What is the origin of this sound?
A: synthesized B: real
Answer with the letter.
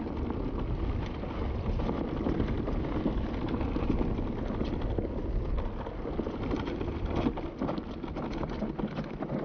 B